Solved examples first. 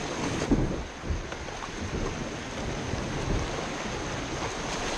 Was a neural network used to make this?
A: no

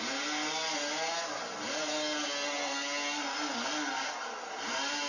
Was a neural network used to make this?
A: no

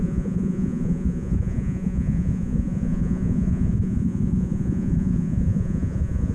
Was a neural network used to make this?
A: yes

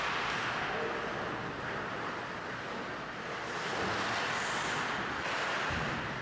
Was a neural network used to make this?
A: no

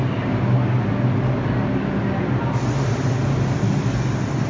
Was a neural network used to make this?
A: no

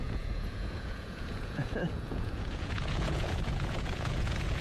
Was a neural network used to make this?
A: yes